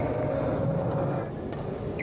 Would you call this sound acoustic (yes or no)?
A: yes